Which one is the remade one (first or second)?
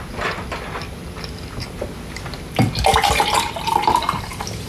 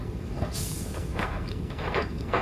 second